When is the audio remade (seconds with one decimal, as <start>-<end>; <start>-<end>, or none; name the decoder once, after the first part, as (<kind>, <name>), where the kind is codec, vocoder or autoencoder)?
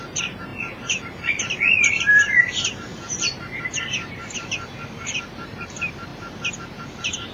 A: 0.0-6.1 (vocoder, BigVGAN v2); 6.6-7.3